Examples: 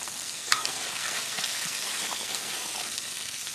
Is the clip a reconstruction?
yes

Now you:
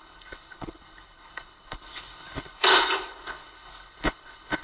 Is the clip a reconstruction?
yes